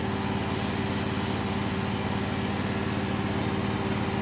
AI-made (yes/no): no